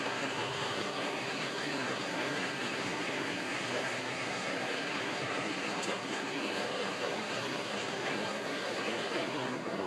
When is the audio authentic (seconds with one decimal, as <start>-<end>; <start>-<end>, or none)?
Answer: none